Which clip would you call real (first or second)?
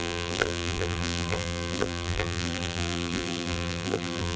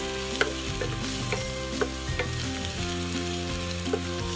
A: second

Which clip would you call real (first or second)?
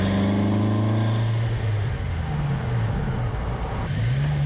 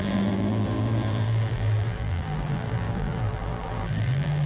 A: first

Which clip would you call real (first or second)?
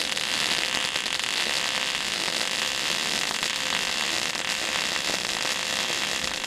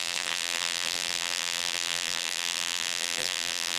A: first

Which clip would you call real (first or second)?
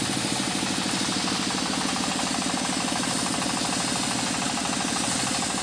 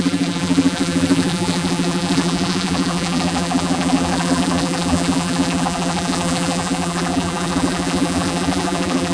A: first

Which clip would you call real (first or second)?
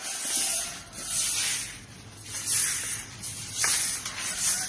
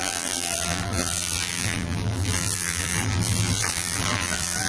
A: first